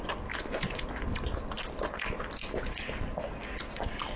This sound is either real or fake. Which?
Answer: real